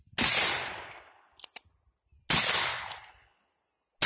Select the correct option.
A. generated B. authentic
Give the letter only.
B